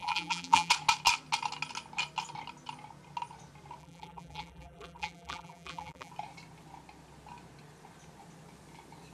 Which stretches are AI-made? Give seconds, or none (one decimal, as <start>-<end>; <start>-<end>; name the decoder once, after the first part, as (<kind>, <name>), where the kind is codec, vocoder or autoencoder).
0.0-0.7 (vocoder, BigVGAN v2); 3.8-6.1